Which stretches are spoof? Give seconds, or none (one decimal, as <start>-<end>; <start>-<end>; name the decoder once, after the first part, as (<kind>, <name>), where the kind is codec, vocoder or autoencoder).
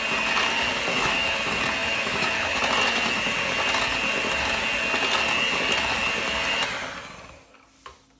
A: 0.9-1.4 (autoencoder, DAC-VAE); 1.8-2.6